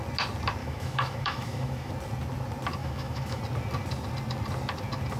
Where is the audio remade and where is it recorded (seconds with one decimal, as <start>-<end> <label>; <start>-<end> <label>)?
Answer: 0.0-0.6 recorded; 0.6-1.9 remade; 1.9-2.8 recorded; 2.8-3.4 remade; 3.4-5.2 recorded